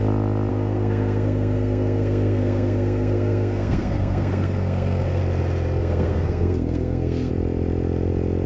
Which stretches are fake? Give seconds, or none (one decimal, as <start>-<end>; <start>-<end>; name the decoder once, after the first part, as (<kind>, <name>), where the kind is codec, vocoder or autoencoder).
0.5-5.2 (codec, SNAC); 5.8-7.3